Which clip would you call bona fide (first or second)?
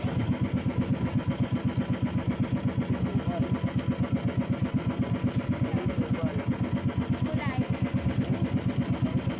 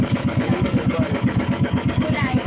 first